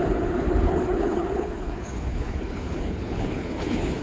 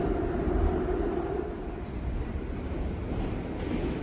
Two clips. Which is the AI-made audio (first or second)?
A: first